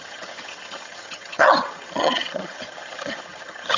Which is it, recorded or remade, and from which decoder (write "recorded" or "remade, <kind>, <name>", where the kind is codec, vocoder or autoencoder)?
remade, vocoder, HiFi-GAN